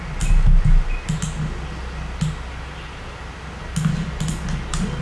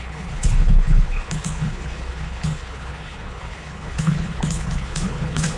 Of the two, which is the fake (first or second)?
second